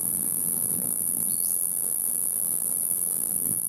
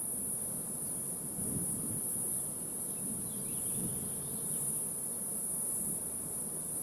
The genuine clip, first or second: second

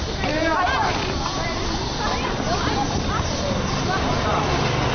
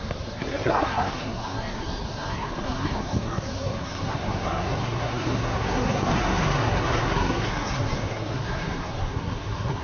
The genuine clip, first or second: first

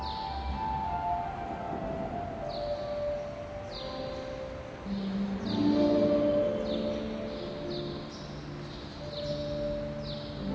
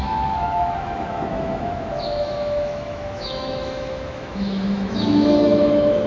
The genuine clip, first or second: first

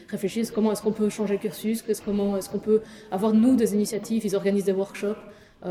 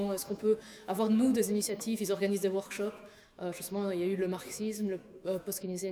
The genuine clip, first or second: first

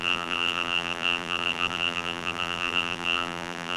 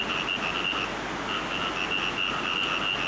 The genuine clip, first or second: second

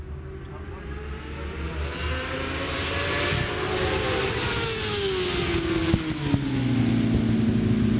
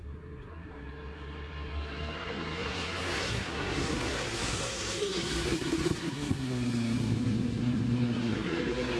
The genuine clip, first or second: first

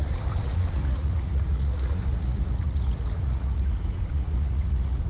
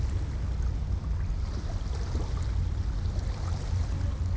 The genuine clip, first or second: second